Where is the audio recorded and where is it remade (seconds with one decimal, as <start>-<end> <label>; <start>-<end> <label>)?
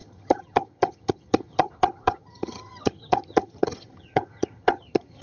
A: 0.0-5.2 remade